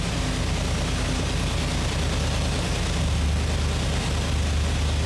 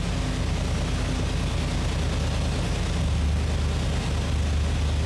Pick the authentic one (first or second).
second